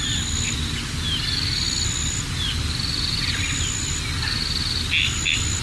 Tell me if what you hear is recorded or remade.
recorded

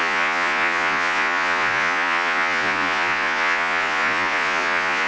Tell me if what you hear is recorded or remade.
remade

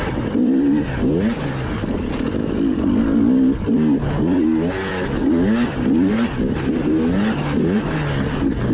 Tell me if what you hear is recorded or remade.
recorded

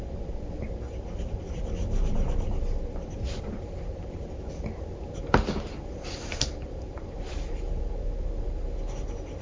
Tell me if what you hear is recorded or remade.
remade